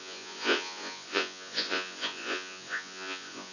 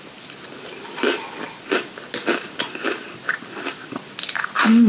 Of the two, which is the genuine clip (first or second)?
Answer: second